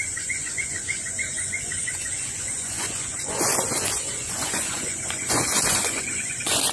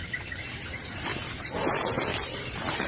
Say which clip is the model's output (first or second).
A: first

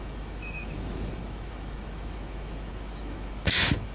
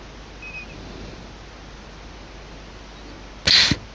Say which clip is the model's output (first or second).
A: first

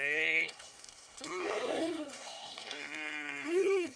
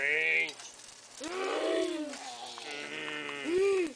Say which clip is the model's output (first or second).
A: first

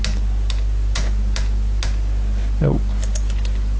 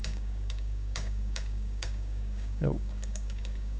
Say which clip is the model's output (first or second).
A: second